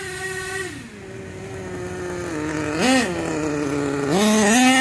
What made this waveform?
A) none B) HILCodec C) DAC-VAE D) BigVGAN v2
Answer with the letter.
A